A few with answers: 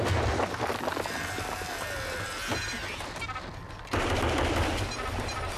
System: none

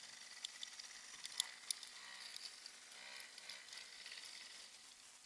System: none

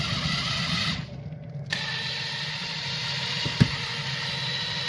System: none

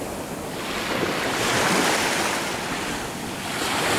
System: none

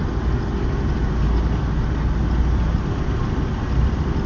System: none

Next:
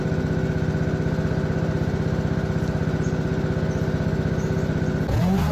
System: none